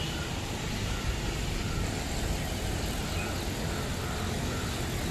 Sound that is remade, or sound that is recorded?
recorded